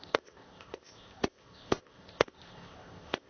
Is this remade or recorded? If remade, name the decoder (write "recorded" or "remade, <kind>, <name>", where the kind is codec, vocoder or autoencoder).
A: remade, codec, ZipCodec